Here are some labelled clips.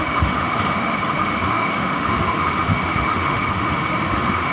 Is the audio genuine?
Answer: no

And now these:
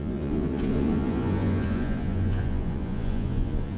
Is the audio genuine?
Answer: no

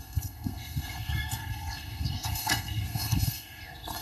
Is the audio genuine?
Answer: no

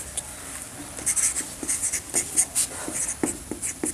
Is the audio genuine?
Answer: yes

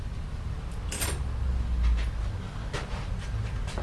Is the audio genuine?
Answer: yes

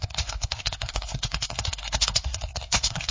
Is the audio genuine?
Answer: no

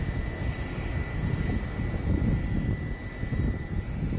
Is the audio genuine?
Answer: yes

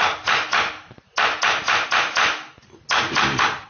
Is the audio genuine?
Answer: yes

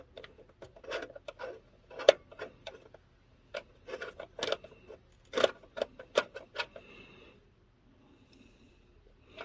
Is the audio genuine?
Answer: yes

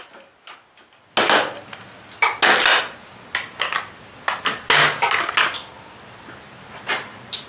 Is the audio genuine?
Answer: yes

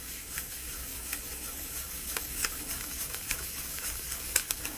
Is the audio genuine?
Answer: no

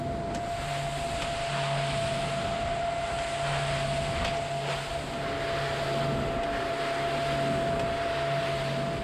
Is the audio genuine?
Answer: yes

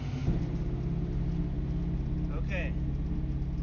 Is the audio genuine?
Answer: yes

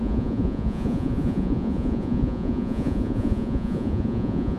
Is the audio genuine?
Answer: no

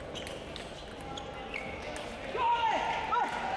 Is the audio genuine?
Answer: yes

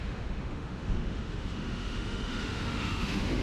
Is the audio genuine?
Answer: no